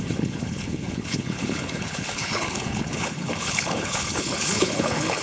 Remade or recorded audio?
remade